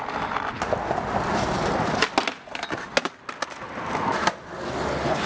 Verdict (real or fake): real